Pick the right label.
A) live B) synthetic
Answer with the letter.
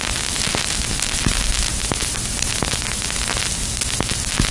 A